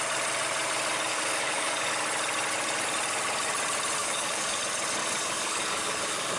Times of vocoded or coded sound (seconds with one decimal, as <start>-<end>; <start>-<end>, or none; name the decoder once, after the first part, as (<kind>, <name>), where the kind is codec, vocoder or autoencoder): 1.1-1.9 (codec, DAC); 4.0-4.6; 5.0-6.4